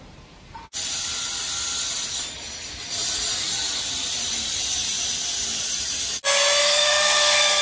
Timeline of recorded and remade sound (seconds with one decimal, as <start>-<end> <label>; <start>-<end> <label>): 0.0-6.6 recorded; 6.6-7.6 remade